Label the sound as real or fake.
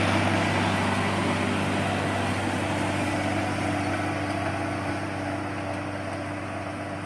real